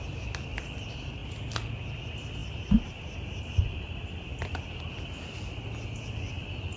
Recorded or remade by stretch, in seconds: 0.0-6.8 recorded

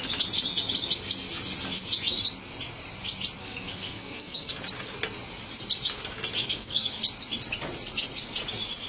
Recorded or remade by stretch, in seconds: 0.0-3.4 recorded; 3.4-4.5 remade; 4.5-6.4 recorded; 6.4-6.9 remade; 6.9-8.9 recorded

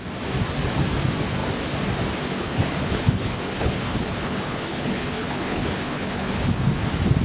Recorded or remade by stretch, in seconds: 0.0-2.4 recorded; 2.4-6.7 remade; 6.7-7.2 recorded

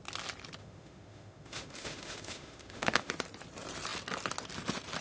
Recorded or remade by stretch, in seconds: 0.0-0.6 recorded; 0.6-3.1 remade; 3.1-5.0 recorded

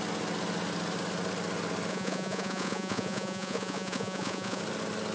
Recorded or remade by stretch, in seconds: 0.0-1.9 recorded; 1.9-4.6 remade; 4.6-5.1 recorded